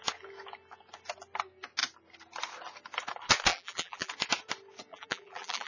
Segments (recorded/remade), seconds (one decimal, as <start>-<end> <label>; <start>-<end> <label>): 0.0-3.5 recorded; 3.5-4.1 remade; 4.1-4.9 recorded; 4.9-5.7 remade